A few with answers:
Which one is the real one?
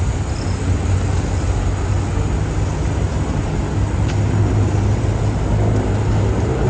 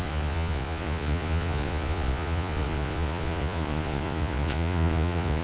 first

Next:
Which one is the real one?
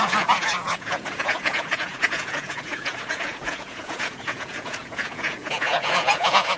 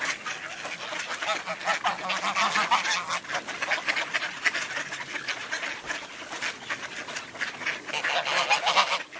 second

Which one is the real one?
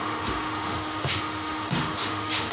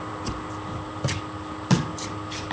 second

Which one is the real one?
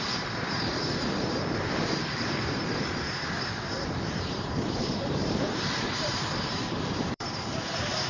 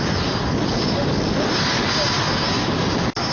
second